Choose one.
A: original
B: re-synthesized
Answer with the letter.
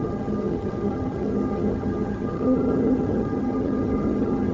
B